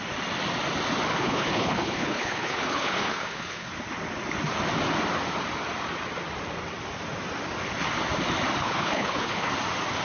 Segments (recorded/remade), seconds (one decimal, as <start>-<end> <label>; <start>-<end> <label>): 0.0-1.1 recorded; 1.1-3.7 remade; 3.7-8.6 recorded; 8.6-9.5 remade; 9.5-10.0 recorded